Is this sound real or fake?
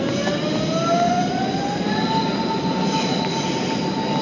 real